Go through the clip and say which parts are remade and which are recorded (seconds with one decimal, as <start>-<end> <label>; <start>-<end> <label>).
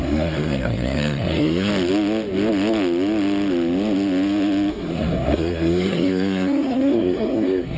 0.0-1.7 remade; 1.7-4.7 recorded; 4.7-7.8 remade